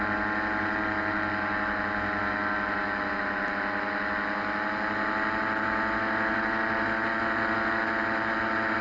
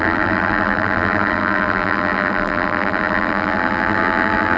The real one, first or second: first